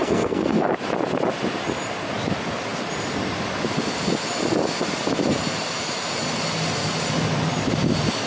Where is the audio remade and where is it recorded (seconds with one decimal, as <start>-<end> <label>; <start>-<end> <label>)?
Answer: 0.0-0.7 remade; 0.7-8.3 recorded

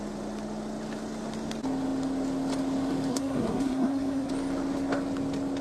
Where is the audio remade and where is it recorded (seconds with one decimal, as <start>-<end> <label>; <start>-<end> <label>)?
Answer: 0.0-3.1 recorded; 3.1-4.3 remade; 4.3-5.6 recorded